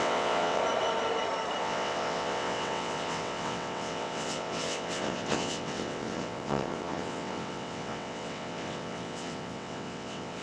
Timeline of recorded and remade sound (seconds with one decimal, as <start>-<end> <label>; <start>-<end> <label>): 0.0-0.6 remade; 0.6-1.6 recorded; 1.6-10.4 remade